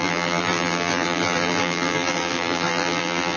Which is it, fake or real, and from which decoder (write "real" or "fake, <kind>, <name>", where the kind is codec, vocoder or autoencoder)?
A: fake, vocoder, BigVGAN v2